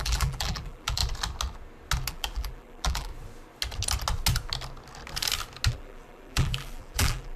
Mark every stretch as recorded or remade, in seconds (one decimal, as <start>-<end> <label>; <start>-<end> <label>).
0.0-1.0 remade; 1.0-2.1 recorded; 2.1-3.1 remade; 3.1-5.7 recorded; 5.7-7.4 remade